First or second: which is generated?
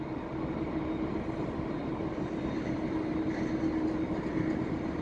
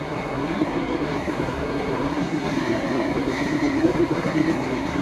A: second